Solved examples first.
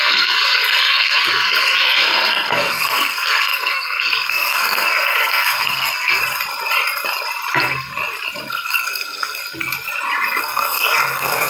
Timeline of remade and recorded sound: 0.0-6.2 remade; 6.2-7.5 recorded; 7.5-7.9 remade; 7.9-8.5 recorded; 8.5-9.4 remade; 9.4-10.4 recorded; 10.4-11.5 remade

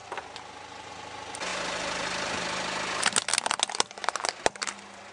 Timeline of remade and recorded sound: 0.0-5.1 recorded